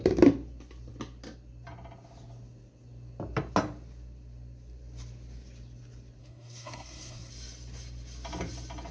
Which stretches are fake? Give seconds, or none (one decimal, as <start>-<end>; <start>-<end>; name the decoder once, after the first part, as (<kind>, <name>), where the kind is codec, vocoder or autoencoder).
6.2-7.3 (codec, SNAC)